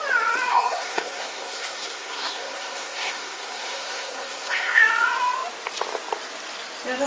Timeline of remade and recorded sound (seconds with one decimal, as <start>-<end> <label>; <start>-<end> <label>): 0.0-0.5 recorded; 0.5-4.8 remade; 4.8-7.1 recorded